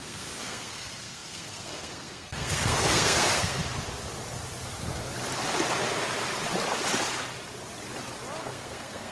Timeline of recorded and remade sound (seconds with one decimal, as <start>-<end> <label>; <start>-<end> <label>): 0.0-3.6 remade; 3.6-8.4 recorded; 8.4-9.1 remade

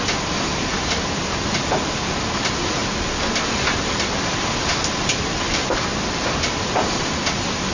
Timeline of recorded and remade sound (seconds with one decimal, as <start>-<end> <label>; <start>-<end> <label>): 0.0-7.7 recorded

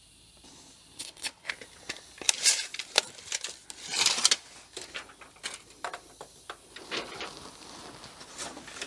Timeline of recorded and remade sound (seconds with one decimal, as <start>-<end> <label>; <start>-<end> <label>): 0.0-1.0 recorded; 1.0-1.5 remade; 1.5-8.9 recorded

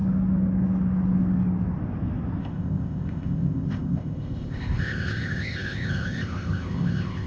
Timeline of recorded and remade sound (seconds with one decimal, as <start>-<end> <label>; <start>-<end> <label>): 0.0-2.4 recorded; 2.4-7.3 remade

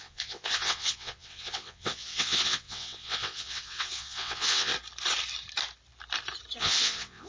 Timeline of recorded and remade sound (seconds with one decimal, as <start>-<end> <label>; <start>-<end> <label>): 0.0-4.7 remade; 4.7-6.6 recorded; 6.6-7.3 remade